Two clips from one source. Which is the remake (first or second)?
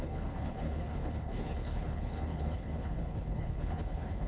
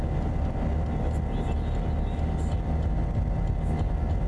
first